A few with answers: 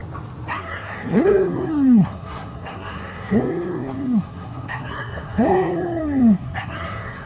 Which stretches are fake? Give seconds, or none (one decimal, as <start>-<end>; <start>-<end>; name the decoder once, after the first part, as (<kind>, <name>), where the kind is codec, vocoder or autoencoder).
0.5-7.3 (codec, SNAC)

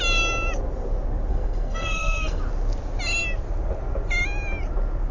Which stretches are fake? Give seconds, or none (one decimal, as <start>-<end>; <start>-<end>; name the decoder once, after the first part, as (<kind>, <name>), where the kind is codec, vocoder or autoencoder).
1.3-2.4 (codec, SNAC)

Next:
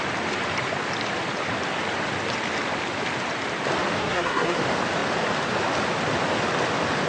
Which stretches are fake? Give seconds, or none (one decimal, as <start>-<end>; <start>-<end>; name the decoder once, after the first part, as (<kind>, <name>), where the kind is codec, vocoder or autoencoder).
4.0-4.6 (codec, SNAC)